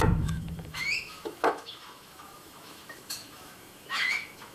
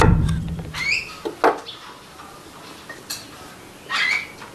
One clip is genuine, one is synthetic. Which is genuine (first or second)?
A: second